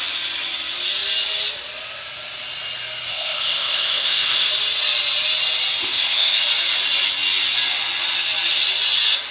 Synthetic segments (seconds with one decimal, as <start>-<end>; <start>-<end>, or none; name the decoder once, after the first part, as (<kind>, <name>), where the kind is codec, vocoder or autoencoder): 3.1-4.5 (codec, ZipCodec); 5.8-6.4